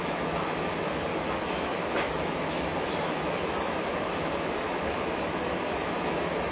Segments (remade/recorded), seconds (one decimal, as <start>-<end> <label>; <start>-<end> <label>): 0.0-6.5 remade